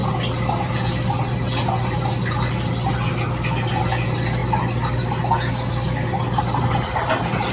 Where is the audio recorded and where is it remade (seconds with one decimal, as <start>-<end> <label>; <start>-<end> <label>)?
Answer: 0.0-7.5 recorded